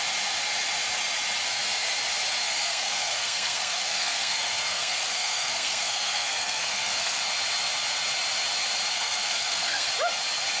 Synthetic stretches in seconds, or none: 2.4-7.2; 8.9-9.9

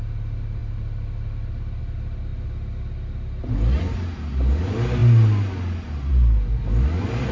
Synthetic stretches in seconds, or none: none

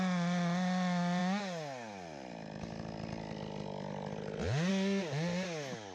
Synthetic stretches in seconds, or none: none

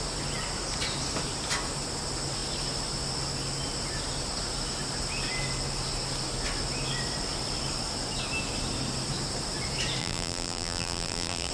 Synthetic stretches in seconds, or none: 10.0-11.5

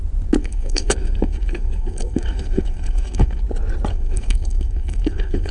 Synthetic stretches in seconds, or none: 0.4-3.4; 3.9-5.5